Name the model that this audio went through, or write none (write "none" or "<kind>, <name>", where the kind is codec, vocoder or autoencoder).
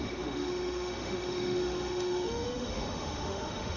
autoencoder, DAC-VAE